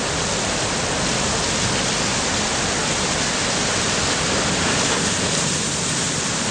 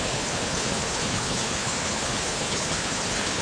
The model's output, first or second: second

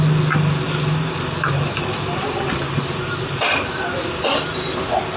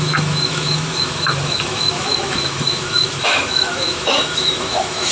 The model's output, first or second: second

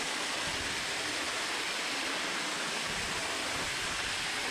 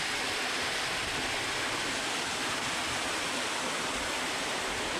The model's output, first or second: second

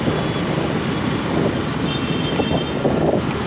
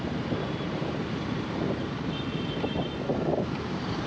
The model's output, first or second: second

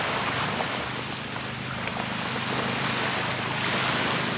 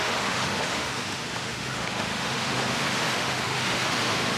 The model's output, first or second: second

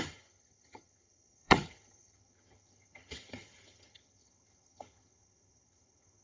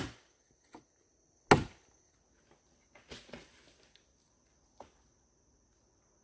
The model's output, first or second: first